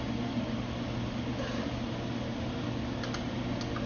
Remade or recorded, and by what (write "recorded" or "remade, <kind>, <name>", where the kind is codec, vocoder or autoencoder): recorded